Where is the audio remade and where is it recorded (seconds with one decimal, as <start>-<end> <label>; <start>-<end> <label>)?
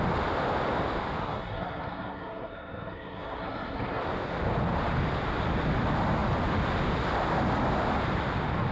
0.0-1.2 recorded; 1.2-4.0 remade; 4.0-8.7 recorded